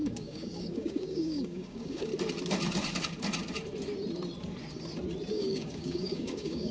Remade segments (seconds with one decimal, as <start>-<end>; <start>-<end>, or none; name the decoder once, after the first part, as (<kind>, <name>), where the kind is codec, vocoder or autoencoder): 0.0-2.1 (codec, DAC); 5.3-6.7